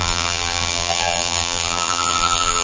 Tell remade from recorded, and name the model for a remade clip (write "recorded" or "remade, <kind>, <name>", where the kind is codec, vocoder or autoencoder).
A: remade, vocoder, BigVGAN v2